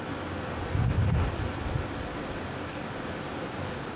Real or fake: real